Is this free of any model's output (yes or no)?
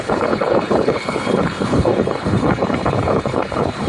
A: no